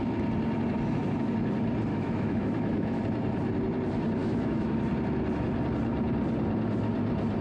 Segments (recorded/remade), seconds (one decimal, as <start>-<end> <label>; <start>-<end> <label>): 0.0-1.9 recorded; 1.9-3.0 remade; 3.0-4.2 recorded; 4.2-4.9 remade; 4.9-7.4 recorded